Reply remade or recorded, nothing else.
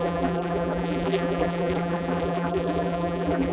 remade